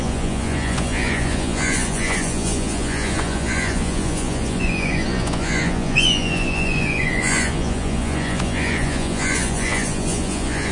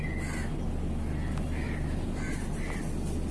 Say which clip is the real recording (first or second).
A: second